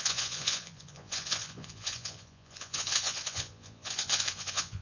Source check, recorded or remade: remade